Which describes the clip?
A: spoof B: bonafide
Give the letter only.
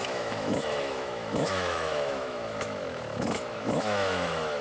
A